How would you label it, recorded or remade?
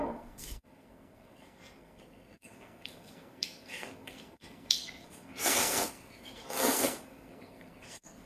remade